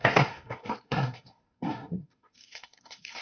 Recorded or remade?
remade